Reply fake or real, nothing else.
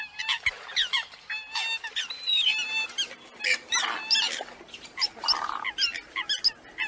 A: real